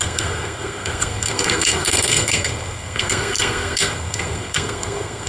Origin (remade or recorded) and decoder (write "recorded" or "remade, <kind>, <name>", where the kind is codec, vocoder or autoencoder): remade, codec, SNAC